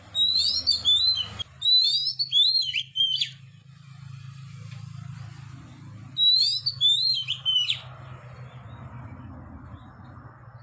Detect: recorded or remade recorded